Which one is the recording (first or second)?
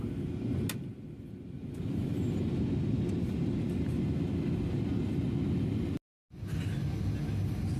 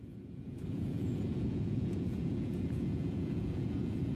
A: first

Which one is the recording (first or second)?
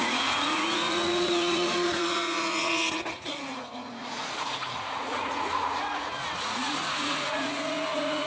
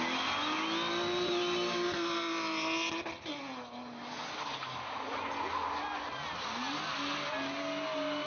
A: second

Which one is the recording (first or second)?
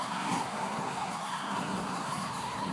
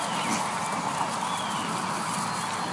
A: second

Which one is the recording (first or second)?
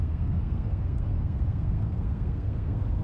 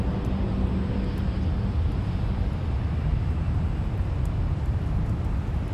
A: second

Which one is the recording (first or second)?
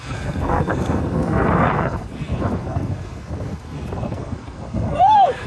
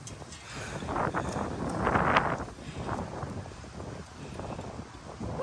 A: second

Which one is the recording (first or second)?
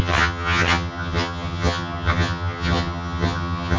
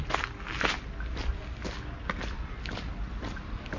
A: second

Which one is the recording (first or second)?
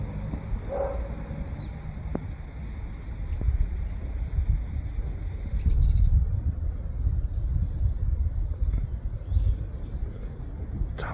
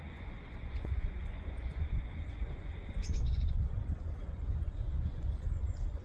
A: first